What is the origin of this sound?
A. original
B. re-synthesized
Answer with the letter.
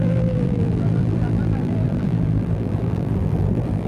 B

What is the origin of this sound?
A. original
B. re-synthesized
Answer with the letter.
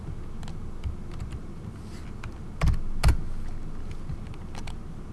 A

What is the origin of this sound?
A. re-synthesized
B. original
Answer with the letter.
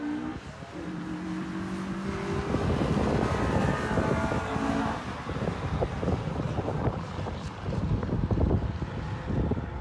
B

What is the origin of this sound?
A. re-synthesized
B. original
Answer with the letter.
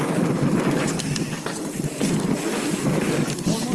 B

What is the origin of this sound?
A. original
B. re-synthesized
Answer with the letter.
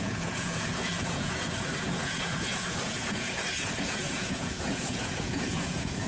B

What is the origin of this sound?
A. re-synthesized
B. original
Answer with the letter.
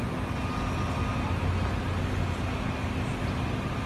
B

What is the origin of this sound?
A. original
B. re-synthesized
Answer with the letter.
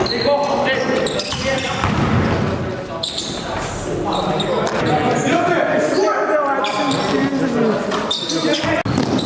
A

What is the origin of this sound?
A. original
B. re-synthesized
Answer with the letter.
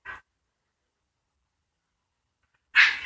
A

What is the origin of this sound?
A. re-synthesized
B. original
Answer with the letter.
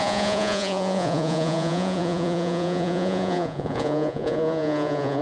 A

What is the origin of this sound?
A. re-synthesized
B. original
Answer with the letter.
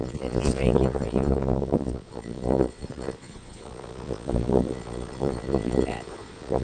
A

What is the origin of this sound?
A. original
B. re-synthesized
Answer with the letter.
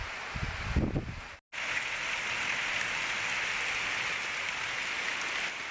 A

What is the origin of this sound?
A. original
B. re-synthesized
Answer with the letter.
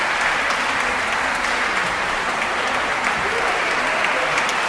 A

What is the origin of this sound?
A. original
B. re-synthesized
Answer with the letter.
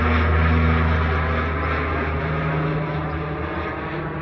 A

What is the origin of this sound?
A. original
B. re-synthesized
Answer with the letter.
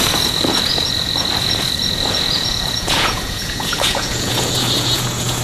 B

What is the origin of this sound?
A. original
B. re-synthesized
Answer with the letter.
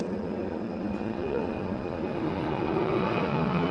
B